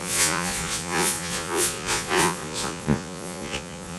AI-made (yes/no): yes